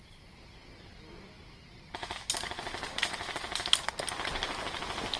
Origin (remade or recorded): recorded